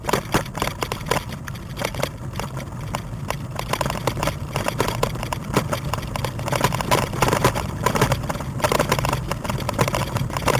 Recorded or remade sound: remade